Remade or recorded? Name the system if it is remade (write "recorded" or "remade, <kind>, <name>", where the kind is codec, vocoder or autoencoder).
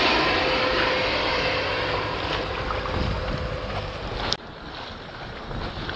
recorded